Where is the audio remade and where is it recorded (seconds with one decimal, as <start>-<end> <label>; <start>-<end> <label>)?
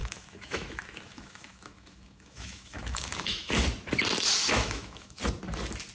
0.0-3.5 remade; 3.5-4.4 recorded; 4.4-5.2 remade; 5.2-5.9 recorded